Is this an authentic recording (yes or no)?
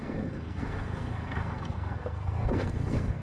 no